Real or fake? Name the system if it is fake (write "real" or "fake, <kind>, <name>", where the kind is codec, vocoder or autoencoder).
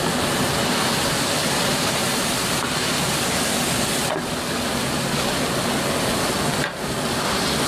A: real